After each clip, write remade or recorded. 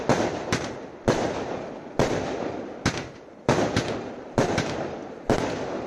recorded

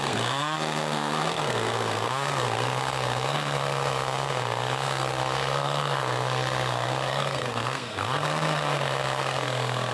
remade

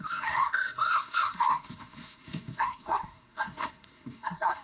remade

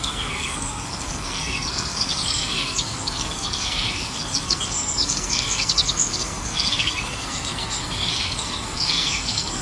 remade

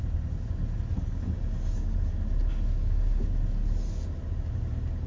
recorded